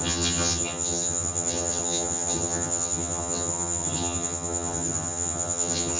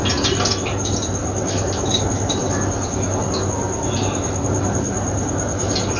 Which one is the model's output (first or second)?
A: first